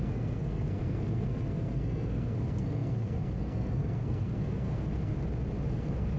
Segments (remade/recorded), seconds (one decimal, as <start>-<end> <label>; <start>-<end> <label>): 0.0-5.1 remade; 5.1-5.7 recorded; 5.7-6.2 remade